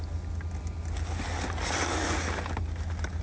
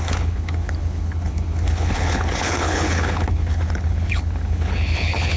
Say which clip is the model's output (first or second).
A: second